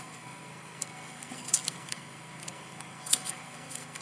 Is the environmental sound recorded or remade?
remade